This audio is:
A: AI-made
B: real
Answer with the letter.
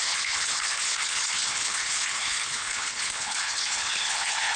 A